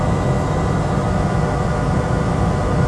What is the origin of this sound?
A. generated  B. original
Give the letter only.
B